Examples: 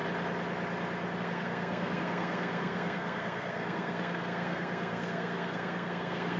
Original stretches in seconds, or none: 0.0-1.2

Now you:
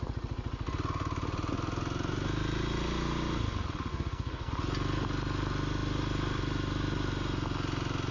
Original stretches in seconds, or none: 0.0-3.9; 4.5-8.1

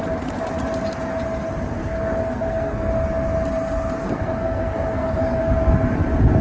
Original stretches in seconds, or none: 0.0-1.8; 2.9-4.0; 5.4-6.4

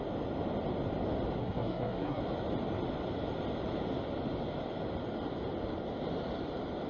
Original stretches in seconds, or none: 0.0-1.4; 2.2-6.9